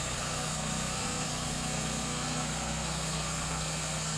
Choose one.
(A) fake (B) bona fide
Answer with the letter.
A